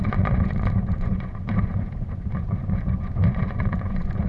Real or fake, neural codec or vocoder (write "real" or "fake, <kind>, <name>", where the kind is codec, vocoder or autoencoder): fake, vocoder, Vocos